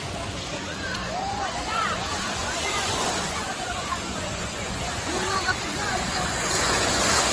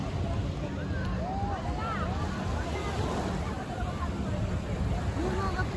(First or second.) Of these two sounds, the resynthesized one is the first